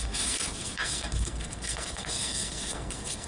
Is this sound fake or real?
fake